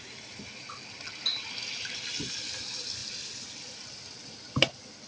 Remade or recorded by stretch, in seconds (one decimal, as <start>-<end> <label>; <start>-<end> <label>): 0.0-5.1 recorded